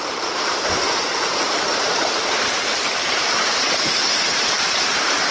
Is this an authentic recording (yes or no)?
no